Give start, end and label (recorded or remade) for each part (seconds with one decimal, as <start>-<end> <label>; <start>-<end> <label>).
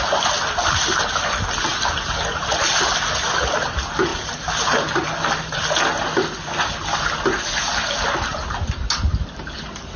0.0-10.0 recorded